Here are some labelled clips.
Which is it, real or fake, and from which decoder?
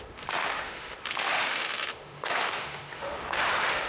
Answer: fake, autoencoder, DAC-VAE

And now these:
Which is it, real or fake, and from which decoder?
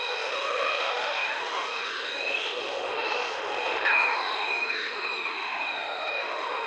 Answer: fake, autoencoder, DAC-VAE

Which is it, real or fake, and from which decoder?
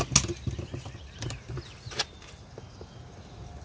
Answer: real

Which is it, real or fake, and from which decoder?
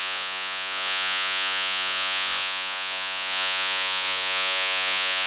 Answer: fake, vocoder, Vocos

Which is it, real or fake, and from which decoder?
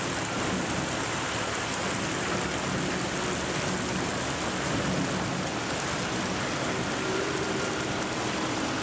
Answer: real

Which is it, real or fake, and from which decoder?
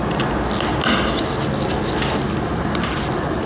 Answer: real